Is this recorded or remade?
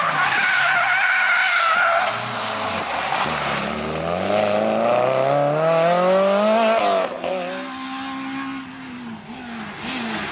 recorded